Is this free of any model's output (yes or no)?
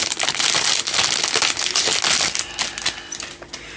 yes